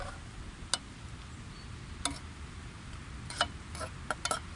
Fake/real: real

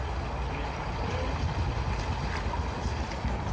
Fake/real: real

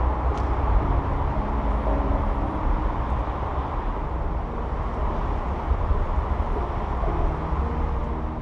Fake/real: real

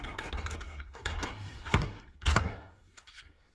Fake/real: fake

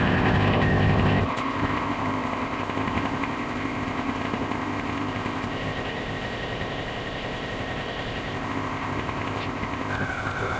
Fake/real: fake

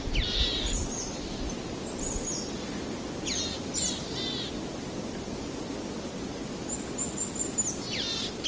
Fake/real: real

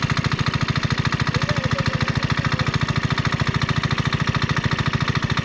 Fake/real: real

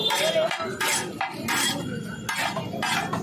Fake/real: real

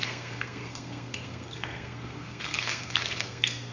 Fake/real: fake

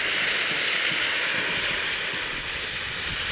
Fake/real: real